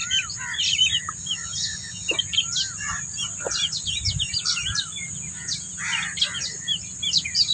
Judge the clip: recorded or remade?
recorded